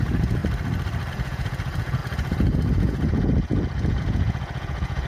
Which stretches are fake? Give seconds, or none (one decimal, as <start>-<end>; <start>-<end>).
0.0-0.4; 1.1-5.1